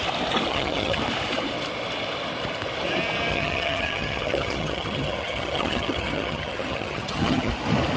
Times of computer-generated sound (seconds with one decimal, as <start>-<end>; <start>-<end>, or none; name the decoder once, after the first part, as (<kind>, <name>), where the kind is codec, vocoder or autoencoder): 0.5-1.0 (vocoder, HiFi-GAN); 3.3-7.5